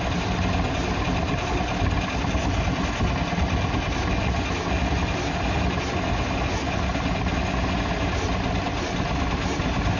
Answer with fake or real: real